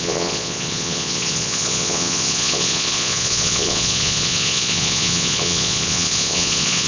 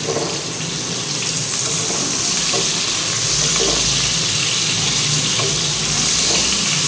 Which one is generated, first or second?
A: first